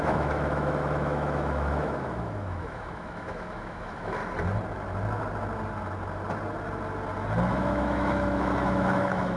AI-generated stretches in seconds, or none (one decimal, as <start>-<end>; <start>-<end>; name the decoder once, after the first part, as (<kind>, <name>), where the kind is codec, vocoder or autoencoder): 0.0-4.2 (autoencoder, DAC-VAE); 7.5-9.4